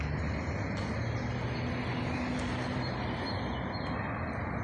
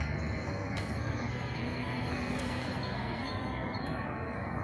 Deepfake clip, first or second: second